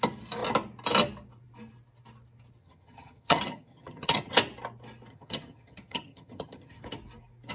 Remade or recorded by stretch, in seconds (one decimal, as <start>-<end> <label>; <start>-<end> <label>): 0.0-2.6 recorded; 2.6-4.3 remade; 4.3-5.1 recorded; 5.1-6.8 remade; 6.8-7.5 recorded